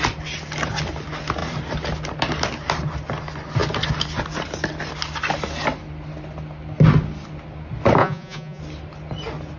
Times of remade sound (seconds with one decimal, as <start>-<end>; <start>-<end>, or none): 8.0-8.6